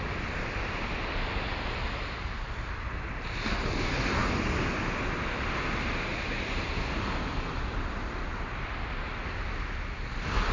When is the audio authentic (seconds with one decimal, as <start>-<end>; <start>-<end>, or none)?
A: 0.0-10.5